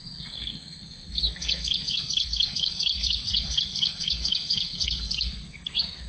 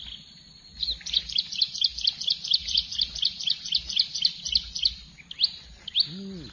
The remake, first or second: first